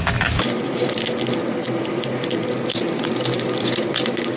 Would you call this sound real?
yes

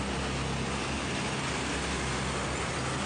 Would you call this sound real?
yes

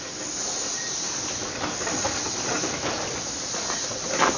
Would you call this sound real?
yes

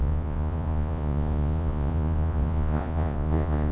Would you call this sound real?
no